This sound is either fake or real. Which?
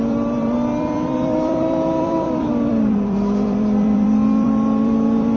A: fake